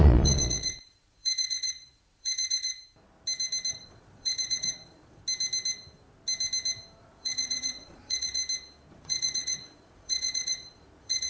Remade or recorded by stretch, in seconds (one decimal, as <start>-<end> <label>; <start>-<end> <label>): 0.0-2.7 remade; 2.7-3.7 recorded; 3.7-5.2 remade; 5.2-7.0 recorded; 7.0-8.4 remade; 8.4-8.9 recorded; 8.9-11.3 remade